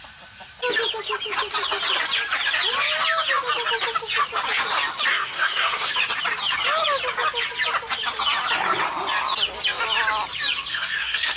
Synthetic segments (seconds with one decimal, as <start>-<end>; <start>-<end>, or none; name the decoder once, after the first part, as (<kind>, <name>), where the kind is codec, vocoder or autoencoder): 5.1-5.9 (codec, SNAC); 10.7-11.4